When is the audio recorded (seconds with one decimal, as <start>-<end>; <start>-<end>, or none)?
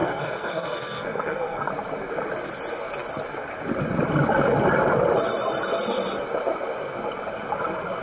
1.7-8.0